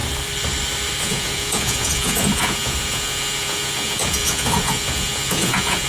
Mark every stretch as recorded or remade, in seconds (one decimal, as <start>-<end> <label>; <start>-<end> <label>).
0.0-1.0 recorded; 1.0-5.9 remade